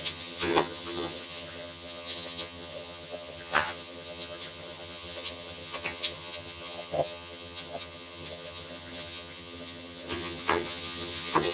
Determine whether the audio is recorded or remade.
remade